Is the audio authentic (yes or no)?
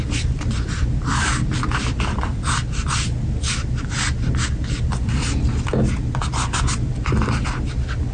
yes